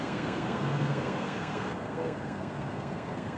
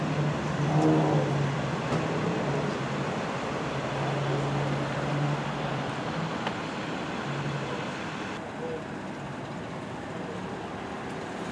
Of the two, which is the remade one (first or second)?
first